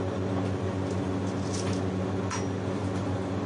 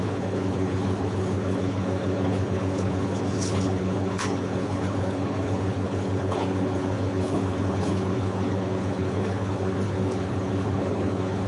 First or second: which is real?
first